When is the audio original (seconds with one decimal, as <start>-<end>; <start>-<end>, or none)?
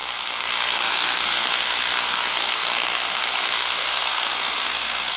none